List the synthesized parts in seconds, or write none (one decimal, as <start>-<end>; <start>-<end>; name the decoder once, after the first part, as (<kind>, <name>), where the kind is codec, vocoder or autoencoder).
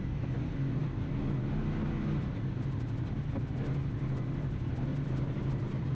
4.9-5.9 (vocoder, BigVGAN v2)